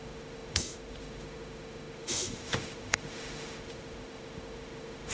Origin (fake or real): fake